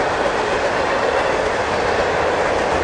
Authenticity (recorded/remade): recorded